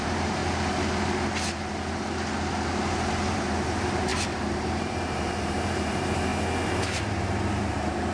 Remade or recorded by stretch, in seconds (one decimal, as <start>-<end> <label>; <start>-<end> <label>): 0.0-0.4 remade; 0.4-2.9 recorded; 2.9-6.3 remade; 6.3-7.0 recorded; 7.0-8.1 remade